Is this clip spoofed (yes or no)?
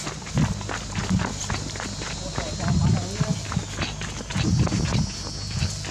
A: no